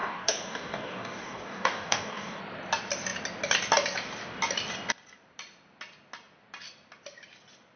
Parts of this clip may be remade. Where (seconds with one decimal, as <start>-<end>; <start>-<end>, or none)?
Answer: 0.0-2.4

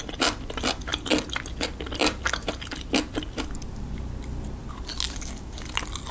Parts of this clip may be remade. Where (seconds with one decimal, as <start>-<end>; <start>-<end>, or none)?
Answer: none

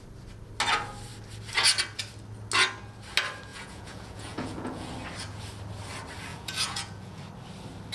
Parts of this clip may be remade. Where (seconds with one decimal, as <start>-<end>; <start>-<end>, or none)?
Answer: 3.5-4.9; 6.3-7.2

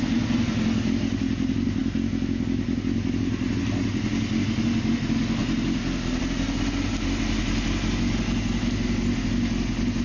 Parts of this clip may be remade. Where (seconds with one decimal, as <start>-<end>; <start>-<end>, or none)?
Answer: none

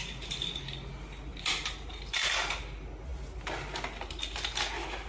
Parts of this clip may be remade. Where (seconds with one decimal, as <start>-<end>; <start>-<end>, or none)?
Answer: 1.3-2.5

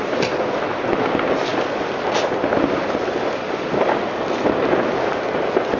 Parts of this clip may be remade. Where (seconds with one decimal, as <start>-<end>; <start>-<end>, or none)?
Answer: none

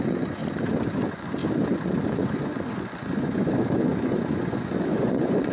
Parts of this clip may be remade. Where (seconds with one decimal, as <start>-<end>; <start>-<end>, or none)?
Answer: 0.0-0.4; 1.0-1.4; 2.1-5.5